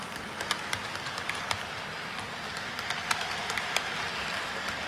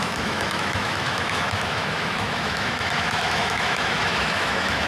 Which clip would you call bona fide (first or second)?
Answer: first